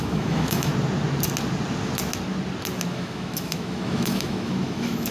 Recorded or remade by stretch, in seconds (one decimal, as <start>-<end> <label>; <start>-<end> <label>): 0.0-0.7 remade; 0.7-2.9 recorded; 2.9-5.1 remade